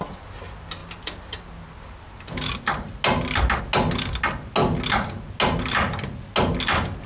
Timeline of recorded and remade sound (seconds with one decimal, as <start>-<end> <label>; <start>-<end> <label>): 0.0-7.1 recorded